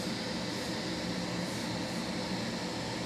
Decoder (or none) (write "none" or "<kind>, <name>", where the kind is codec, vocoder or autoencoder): none